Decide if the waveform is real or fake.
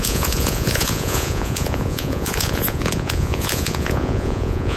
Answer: fake